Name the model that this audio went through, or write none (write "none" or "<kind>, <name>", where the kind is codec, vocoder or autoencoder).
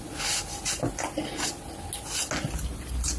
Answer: none